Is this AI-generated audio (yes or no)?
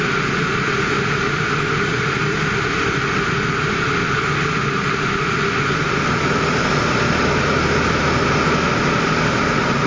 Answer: no